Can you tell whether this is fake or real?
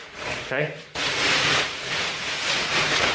fake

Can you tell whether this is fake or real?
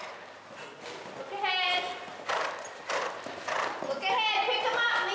real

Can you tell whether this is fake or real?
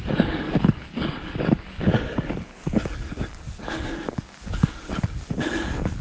fake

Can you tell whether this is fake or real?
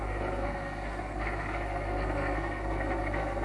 fake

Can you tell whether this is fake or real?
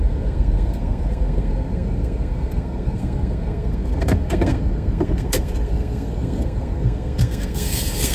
fake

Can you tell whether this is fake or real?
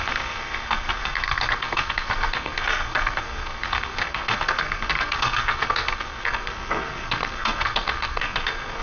fake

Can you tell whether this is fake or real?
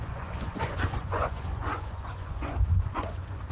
fake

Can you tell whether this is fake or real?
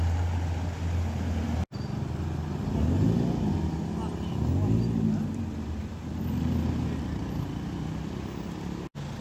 real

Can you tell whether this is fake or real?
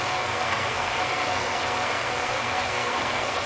fake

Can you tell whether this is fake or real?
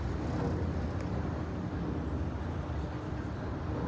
real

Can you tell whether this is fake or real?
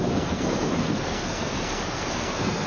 fake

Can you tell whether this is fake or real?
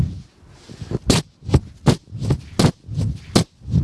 real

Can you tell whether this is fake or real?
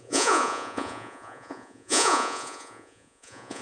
fake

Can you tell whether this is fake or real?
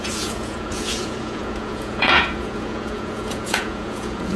fake